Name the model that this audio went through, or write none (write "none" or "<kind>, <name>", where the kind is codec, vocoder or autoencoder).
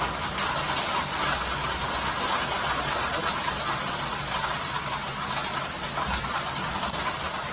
none